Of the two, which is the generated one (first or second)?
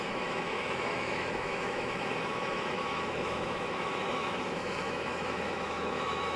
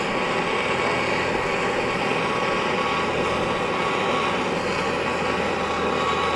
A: first